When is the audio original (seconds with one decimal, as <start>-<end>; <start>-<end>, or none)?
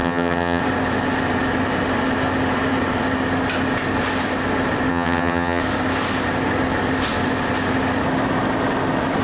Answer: 0.6-4.9; 5.6-9.2